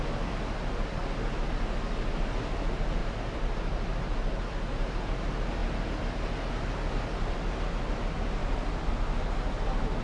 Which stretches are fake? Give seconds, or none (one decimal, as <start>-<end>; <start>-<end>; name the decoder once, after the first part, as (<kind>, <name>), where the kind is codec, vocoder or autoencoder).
3.0-4.7 (vocoder, BigVGAN v2); 8.4-8.9